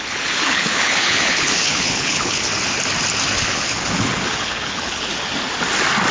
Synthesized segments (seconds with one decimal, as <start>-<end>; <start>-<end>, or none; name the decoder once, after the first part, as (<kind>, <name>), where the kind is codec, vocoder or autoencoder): 0.0-2.5 (codec, HILCodec); 3.4-5.1